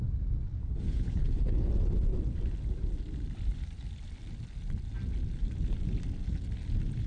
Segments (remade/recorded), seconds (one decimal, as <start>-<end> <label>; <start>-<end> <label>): 0.0-0.6 recorded; 0.6-1.7 remade; 1.7-7.1 recorded